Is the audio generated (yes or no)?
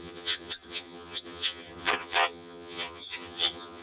yes